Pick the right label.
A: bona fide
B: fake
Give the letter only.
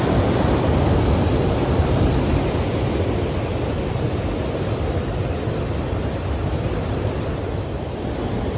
A